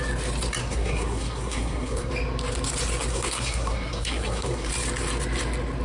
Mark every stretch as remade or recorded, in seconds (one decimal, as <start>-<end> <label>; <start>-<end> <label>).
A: 0.0-0.6 recorded; 0.6-2.1 remade; 2.1-3.1 recorded; 3.1-4.7 remade; 4.7-5.8 recorded